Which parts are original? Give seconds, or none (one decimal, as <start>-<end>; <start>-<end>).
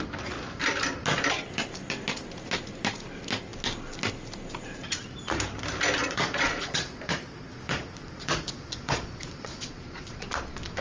0.0-6.0; 10.3-10.8